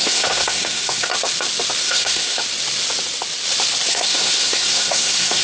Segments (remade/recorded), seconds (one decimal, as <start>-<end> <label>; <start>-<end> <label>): 0.0-1.1 remade; 1.1-1.8 recorded; 1.8-2.4 remade; 2.4-3.9 recorded; 3.9-5.4 remade